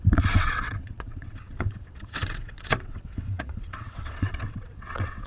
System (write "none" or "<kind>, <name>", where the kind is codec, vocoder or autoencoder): vocoder, WaveNeXt